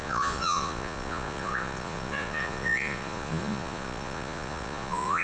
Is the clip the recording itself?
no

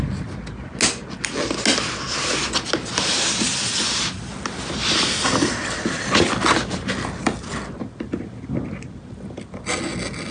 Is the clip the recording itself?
yes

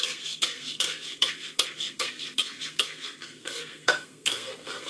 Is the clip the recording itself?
no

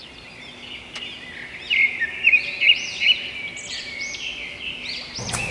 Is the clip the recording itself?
yes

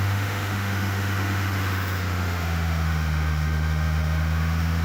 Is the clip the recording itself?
no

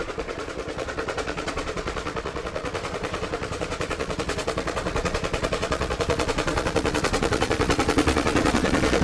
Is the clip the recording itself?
no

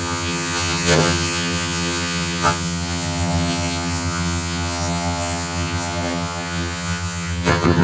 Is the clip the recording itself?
no